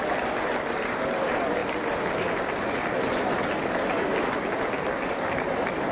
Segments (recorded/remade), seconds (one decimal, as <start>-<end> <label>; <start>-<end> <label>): 0.0-5.9 recorded